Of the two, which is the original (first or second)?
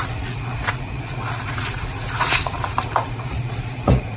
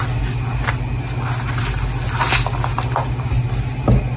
second